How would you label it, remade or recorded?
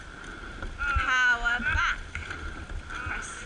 recorded